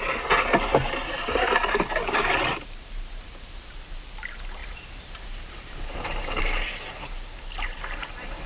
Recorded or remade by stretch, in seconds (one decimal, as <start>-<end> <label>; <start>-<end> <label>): 0.0-0.8 recorded; 0.8-3.3 remade; 3.3-4.6 recorded; 4.6-6.4 remade; 6.4-8.5 recorded